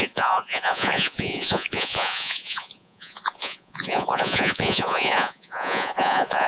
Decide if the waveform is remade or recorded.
remade